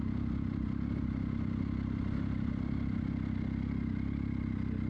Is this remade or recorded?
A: recorded